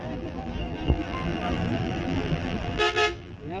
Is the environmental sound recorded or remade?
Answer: remade